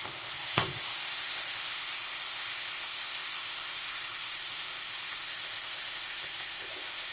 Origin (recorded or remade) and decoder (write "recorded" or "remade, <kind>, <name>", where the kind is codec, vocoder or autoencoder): remade, codec, ZipCodec